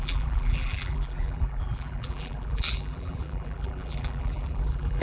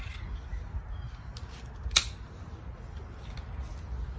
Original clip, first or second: second